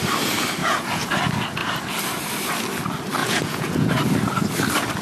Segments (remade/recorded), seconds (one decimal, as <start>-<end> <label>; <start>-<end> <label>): 0.0-0.6 recorded; 0.6-1.1 remade; 1.1-3.2 recorded; 3.2-3.9 remade; 3.9-5.0 recorded